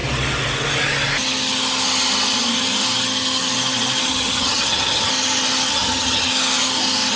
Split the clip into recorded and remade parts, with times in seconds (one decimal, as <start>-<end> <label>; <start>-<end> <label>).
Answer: 0.0-4.1 recorded; 4.1-5.1 remade; 5.1-5.7 recorded; 5.7-6.3 remade; 6.3-7.2 recorded